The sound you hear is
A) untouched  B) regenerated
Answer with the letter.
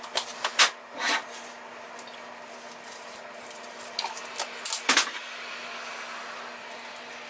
A